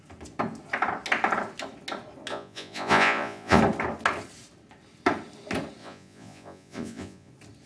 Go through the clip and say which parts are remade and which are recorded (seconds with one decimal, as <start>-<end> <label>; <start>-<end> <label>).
0.0-2.3 recorded; 2.3-3.6 remade; 3.6-5.8 recorded; 5.8-7.3 remade; 7.3-7.7 recorded